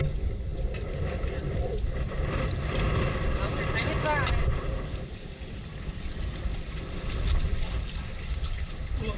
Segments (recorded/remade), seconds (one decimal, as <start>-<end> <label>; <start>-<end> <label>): 0.0-9.2 recorded